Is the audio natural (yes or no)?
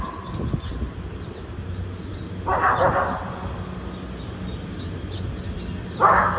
yes